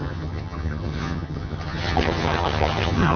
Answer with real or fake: fake